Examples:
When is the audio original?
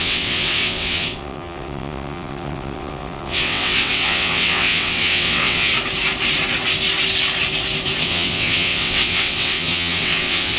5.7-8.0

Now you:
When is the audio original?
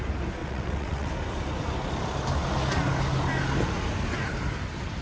0.0-0.4; 1.1-5.0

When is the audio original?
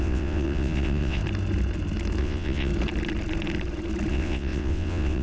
1.2-2.2; 2.7-4.1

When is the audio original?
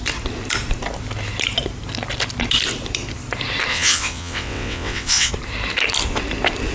0.0-3.7; 5.3-6.7